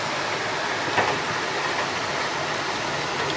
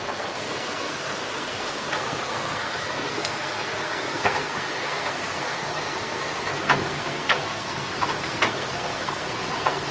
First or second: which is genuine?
first